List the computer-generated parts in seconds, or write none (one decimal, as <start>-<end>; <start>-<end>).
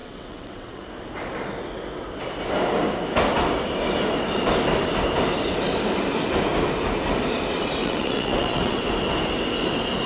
0.0-0.8; 7.8-8.9